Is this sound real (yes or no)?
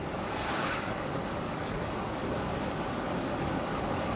no